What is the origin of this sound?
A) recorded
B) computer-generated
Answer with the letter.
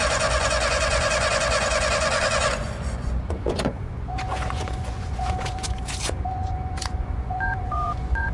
B